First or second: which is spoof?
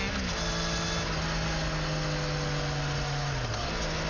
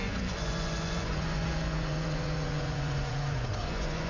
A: second